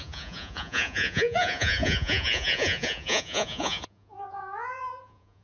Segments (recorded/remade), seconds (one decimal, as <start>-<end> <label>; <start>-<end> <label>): 0.0-5.4 remade

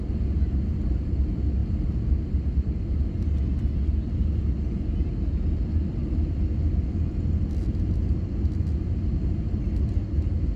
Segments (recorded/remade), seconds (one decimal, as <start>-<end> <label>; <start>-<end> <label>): 0.0-10.6 recorded

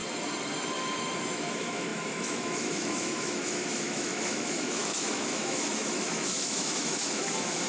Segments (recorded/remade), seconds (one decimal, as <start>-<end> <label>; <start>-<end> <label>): 0.0-1.2 recorded; 1.2-7.7 remade

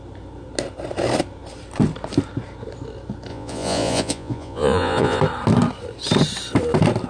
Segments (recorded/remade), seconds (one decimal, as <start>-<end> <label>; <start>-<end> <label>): 0.0-3.3 recorded; 3.3-5.2 remade; 5.2-7.1 recorded

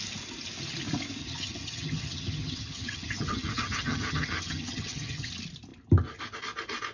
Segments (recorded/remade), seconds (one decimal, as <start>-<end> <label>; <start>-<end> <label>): 0.0-1.2 recorded; 1.2-5.3 remade; 5.3-6.9 recorded

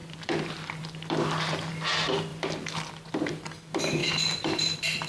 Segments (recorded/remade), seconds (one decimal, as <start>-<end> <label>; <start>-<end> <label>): 0.0-1.7 remade; 1.7-2.3 recorded; 2.3-2.9 remade; 2.9-4.0 recorded; 4.0-5.1 remade

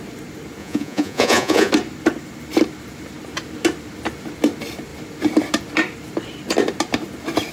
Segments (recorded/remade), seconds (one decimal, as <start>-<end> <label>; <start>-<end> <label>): 0.0-0.6 recorded; 0.6-1.7 remade; 1.7-7.5 recorded

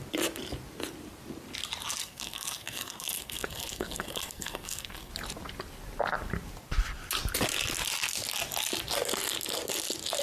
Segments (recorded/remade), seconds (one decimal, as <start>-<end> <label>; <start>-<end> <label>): 0.0-2.0 recorded; 2.0-5.1 remade; 5.1-10.2 recorded